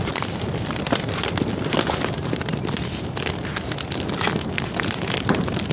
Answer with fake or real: real